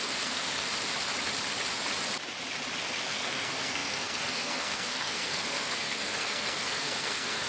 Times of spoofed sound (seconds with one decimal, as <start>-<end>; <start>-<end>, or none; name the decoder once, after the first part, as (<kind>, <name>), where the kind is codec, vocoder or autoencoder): 0.0-0.7 (codec, SNAC); 3.0-7.5